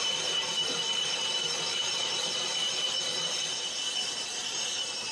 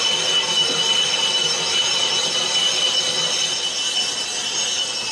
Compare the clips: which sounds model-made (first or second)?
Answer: first